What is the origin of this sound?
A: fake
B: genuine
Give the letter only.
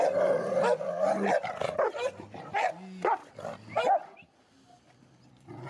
B